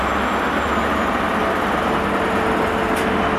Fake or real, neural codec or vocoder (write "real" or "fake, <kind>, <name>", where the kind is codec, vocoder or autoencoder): real